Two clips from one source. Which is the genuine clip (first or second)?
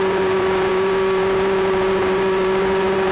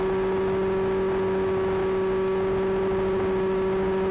second